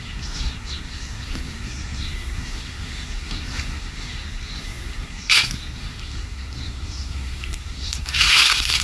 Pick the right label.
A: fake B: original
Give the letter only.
A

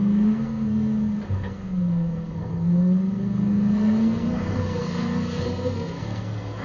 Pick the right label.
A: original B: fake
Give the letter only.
B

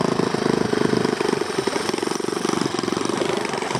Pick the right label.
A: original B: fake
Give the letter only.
A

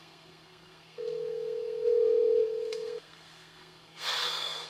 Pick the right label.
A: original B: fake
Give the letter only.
B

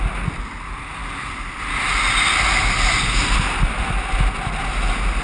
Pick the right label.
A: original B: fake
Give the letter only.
A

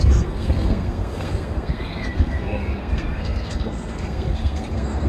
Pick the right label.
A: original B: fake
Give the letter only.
B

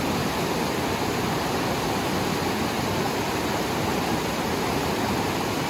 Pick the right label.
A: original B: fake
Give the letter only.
A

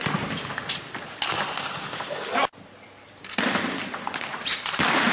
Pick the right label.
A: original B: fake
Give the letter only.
A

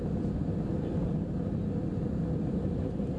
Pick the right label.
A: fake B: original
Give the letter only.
B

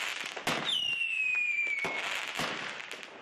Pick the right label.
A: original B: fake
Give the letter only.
A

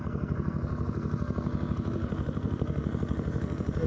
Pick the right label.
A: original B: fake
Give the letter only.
B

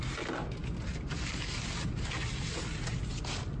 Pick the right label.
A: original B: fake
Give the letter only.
A